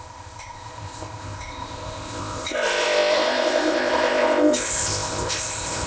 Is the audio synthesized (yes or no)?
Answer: yes